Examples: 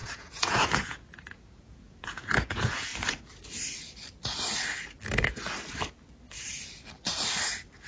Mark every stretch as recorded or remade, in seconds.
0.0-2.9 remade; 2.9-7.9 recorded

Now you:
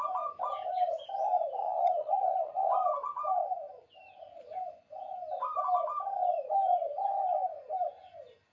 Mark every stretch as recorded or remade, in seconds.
0.0-1.6 recorded; 1.6-2.7 remade; 2.7-8.5 recorded